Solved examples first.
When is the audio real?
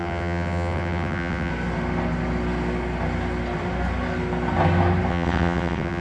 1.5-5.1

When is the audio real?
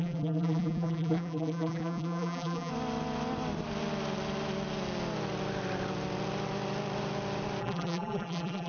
2.7-7.6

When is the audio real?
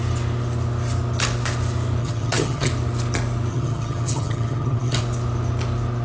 0.0-2.0; 2.7-3.5; 5.0-6.0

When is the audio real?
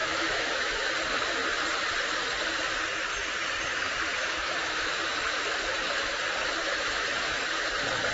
0.9-4.2; 5.1-6.6; 7.4-8.1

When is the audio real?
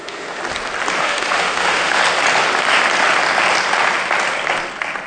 0.4-1.0; 2.0-5.1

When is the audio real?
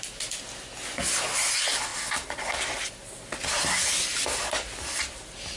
0.0-5.6